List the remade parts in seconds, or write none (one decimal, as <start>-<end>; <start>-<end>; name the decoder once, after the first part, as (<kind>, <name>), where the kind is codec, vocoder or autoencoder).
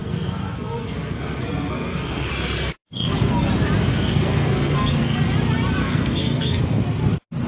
0.0-2.3 (codec, SNAC); 2.9-3.5; 3.9-5.2; 5.8-6.6